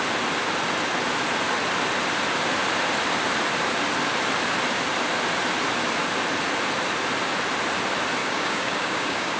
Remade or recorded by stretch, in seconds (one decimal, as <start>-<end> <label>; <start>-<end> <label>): 0.0-8.2 recorded; 8.2-9.4 remade